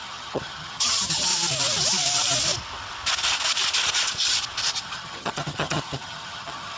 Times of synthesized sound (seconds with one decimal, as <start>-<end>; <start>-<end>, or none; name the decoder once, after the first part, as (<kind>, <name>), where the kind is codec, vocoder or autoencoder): 0.0-1.3 (vocoder, HiFi-GAN); 4.7-6.8